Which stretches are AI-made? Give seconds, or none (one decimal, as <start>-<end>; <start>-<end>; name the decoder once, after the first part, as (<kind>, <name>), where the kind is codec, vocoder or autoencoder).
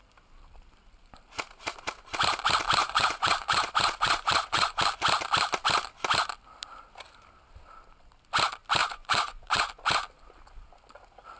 2.8-4.8 (vocoder, Vocos); 8.8-9.7